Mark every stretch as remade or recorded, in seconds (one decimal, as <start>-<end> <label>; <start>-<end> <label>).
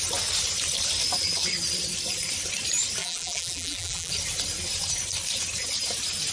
0.0-3.0 recorded; 3.0-4.1 remade; 4.1-6.3 recorded